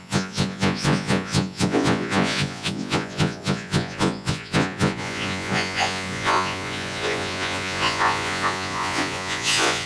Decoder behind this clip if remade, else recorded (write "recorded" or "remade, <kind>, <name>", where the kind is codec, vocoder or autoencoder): remade, vocoder, Vocos